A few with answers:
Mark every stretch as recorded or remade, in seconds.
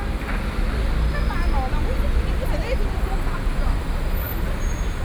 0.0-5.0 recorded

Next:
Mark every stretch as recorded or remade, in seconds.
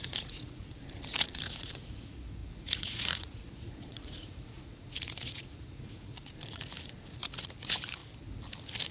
0.0-8.0 remade; 8.0-8.9 recorded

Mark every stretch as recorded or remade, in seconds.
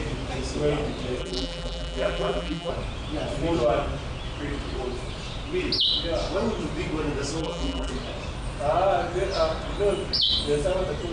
0.0-1.2 recorded; 1.2-2.7 remade; 2.7-7.4 recorded; 7.4-7.9 remade; 7.9-11.1 recorded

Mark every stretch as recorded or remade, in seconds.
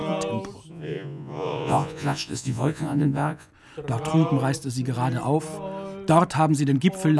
0.0-0.7 recorded; 0.7-3.5 remade; 3.5-7.2 recorded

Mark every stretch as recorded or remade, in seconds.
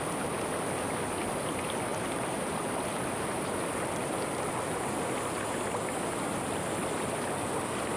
0.0-1.9 recorded; 1.9-4.1 remade; 4.1-8.0 recorded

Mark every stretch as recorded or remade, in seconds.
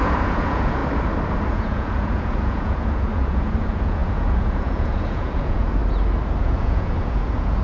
0.0-0.8 remade; 0.8-1.5 recorded; 1.5-5.8 remade; 5.8-6.4 recorded; 6.4-7.6 remade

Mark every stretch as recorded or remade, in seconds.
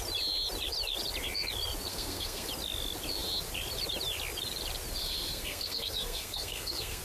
0.0-1.9 recorded; 1.9-2.5 remade; 2.5-5.0 recorded; 5.0-7.0 remade